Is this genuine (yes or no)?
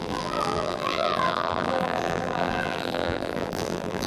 no